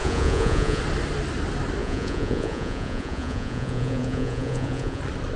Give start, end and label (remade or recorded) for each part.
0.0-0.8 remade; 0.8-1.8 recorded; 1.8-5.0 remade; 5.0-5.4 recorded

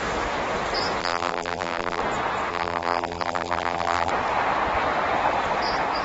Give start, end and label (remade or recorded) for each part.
0.0-1.0 recorded; 1.0-2.0 remade; 2.0-2.5 recorded; 2.5-4.1 remade; 4.1-6.0 recorded